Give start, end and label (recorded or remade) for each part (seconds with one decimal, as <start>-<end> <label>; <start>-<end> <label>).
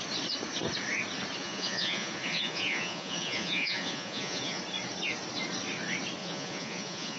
0.0-1.4 recorded; 1.4-4.6 remade; 4.6-6.2 recorded; 6.2-7.2 remade